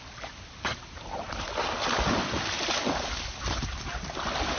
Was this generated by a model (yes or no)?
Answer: no